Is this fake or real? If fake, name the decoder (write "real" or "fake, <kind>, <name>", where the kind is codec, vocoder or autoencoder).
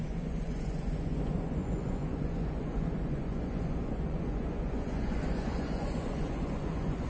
fake, vocoder, Vocos